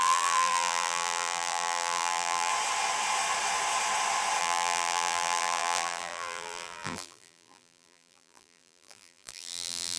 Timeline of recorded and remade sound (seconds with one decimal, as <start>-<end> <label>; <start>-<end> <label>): 0.0-2.5 remade; 2.5-4.4 recorded; 4.4-10.0 remade